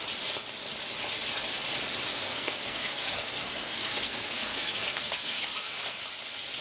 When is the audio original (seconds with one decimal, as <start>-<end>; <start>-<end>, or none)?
0.0-2.1; 6.0-6.6